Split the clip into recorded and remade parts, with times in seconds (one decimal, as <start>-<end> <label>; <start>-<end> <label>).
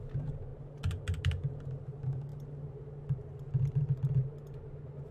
0.0-5.1 recorded